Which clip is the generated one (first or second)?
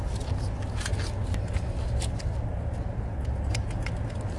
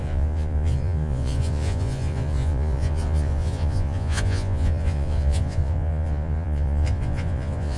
second